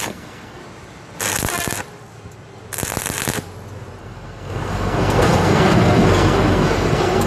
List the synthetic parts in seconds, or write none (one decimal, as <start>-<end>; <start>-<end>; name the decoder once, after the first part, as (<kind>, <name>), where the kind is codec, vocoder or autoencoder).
0.0-0.6 (codec, SNAC); 4.0-7.3